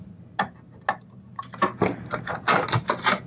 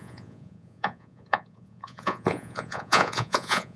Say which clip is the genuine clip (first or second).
first